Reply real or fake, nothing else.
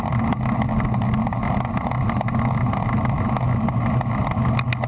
real